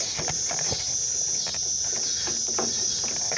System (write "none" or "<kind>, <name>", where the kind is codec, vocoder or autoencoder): none